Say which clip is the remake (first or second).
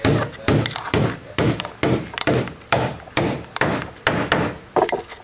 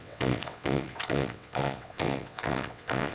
second